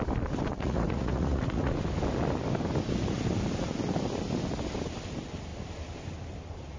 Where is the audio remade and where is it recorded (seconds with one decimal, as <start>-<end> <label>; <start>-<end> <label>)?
0.0-0.5 recorded; 0.5-1.7 remade; 1.7-6.8 recorded